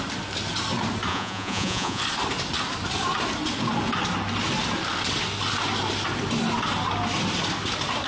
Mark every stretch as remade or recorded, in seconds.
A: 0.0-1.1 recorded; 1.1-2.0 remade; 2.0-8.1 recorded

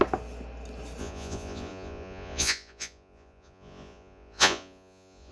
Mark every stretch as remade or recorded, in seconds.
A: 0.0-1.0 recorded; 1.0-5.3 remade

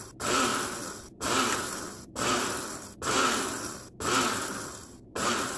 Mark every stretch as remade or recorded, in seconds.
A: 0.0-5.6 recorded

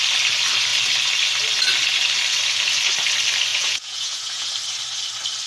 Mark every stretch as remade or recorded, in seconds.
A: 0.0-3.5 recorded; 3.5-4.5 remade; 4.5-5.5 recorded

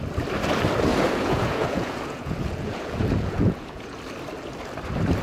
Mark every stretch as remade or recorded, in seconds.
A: 0.0-0.9 recorded; 0.9-4.0 remade; 4.0-5.2 recorded

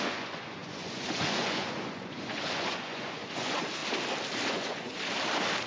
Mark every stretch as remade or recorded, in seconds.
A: 0.0-3.8 remade; 3.8-4.5 recorded; 4.5-4.9 remade; 4.9-5.7 recorded

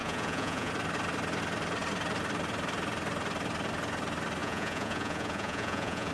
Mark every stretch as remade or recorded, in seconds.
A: 0.0-0.7 remade; 0.7-4.4 recorded; 4.4-6.1 remade